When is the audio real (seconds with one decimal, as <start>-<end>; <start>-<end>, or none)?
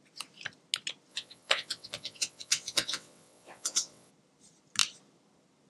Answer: 0.0-1.1; 4.1-5.7